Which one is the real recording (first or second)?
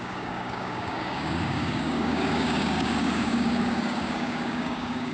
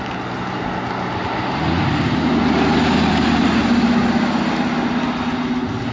second